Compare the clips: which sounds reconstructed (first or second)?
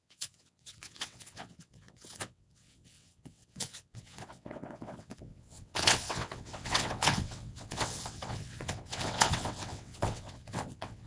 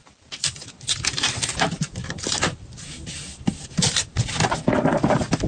first